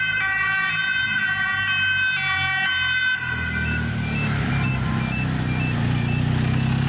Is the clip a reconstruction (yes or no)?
no